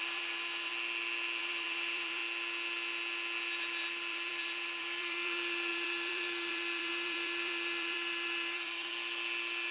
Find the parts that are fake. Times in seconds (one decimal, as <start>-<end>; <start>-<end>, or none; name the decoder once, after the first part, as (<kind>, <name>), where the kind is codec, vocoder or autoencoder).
0.0-0.7 (vocoder, BigVGAN v2); 1.4-2.2; 3.6-8.9